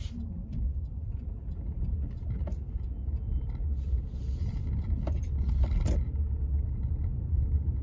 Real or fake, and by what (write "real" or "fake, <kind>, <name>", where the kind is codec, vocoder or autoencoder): real